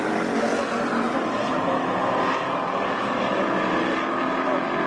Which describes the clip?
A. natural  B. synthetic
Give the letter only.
A